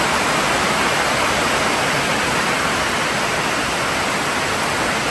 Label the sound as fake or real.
real